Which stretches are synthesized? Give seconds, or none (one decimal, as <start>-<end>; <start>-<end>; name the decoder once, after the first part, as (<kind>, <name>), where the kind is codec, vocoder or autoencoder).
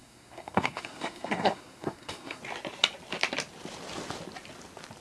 0.0-2.4 (codec, SNAC)